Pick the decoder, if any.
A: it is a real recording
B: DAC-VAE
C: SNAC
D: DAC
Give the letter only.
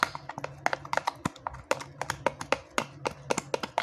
A